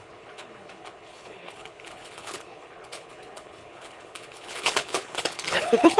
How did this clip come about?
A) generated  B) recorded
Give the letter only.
A